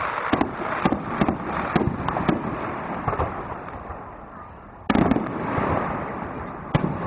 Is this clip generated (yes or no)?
no